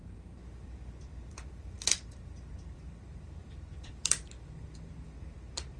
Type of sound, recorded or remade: remade